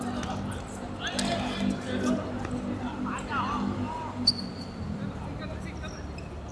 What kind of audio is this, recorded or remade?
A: recorded